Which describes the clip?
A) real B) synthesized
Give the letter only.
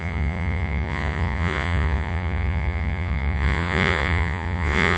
B